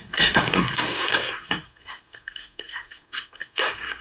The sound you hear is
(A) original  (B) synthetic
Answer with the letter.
B